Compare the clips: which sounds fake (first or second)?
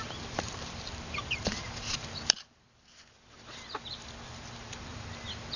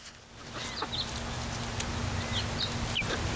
first